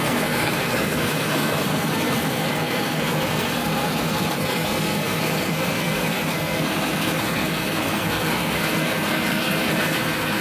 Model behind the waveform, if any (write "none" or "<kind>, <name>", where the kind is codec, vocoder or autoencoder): codec, SNAC